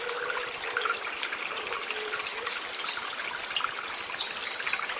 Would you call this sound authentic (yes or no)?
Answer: yes